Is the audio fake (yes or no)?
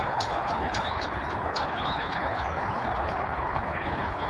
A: yes